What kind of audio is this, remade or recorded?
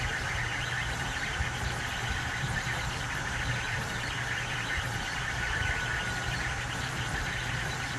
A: remade